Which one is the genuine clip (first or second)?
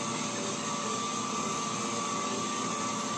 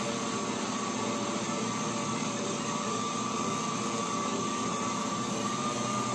first